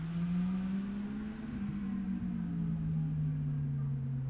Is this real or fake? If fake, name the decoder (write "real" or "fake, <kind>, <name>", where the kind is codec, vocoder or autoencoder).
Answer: real